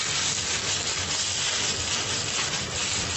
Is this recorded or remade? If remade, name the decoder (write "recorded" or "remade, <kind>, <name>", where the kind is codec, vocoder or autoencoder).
recorded